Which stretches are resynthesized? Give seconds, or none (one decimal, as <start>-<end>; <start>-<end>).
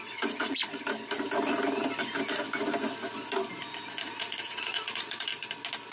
0.0-0.6; 4.0-5.3